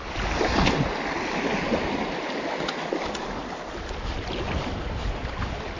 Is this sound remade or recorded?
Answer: recorded